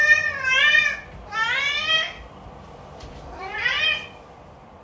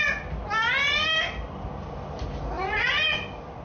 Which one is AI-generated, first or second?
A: first